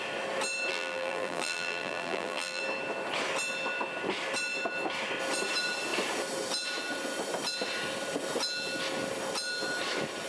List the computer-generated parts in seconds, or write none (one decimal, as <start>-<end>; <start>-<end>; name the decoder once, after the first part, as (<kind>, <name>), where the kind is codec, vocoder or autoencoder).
0.7-2.6 (vocoder, BigVGAN v2)

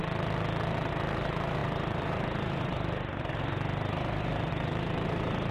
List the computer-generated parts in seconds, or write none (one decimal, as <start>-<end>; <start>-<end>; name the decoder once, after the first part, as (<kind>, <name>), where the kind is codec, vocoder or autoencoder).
0.9-5.5 (vocoder, BigVGAN v2)